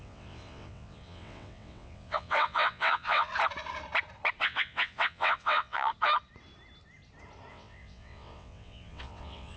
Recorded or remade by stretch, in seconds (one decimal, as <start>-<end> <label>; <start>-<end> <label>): 0.0-3.3 remade; 3.3-4.4 recorded; 4.4-5.9 remade; 5.9-7.5 recorded; 7.5-9.6 remade